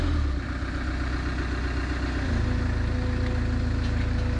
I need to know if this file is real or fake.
real